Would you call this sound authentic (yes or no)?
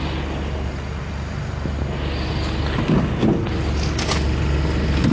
yes